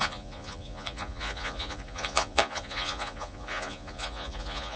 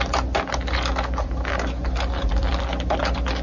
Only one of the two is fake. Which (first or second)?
first